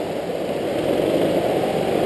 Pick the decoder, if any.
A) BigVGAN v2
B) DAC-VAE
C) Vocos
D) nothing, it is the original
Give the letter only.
D